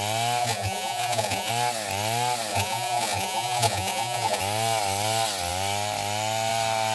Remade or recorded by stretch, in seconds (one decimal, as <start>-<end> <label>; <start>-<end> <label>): 0.0-0.4 recorded; 0.4-1.5 remade; 1.5-2.5 recorded; 2.5-4.4 remade; 4.4-6.9 recorded